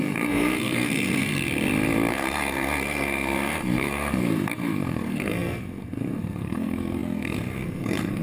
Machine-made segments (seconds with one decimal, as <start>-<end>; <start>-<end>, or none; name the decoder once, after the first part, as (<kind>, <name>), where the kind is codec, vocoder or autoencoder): 0.0-1.3 (codec, SNAC); 2.1-8.2

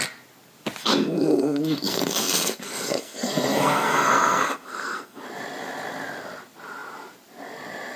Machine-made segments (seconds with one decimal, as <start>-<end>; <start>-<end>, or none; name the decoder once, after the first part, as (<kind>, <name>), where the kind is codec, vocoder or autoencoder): 0.8-5.2 (codec, SNAC)

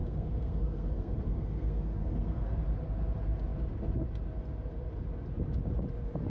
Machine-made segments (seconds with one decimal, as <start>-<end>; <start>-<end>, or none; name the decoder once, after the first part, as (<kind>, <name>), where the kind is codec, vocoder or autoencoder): 0.0-2.6 (codec, SNAC)